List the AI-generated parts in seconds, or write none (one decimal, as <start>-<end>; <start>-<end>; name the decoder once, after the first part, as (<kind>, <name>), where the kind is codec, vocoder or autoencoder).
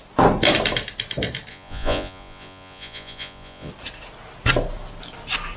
1.5-3.7 (vocoder, Vocos)